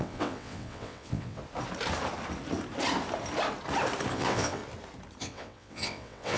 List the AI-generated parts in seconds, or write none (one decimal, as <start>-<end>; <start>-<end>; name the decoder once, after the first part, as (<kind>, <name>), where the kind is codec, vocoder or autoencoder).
0.0-1.4 (vocoder, WaveNeXt); 4.1-4.6; 5.2-6.4